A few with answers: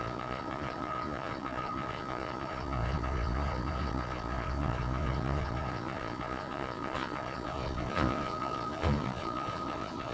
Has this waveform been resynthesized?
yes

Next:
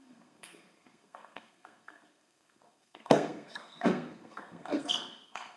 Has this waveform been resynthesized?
yes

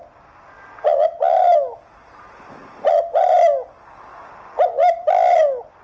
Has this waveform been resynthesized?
no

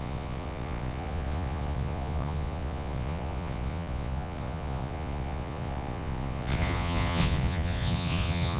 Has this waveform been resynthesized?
yes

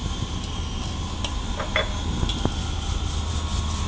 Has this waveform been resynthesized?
no